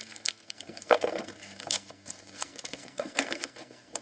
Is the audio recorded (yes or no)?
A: no